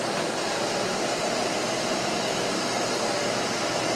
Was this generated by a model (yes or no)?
no